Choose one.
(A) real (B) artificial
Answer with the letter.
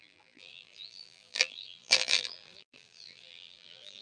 B